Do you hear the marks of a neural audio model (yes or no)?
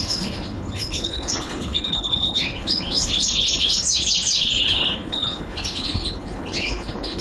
yes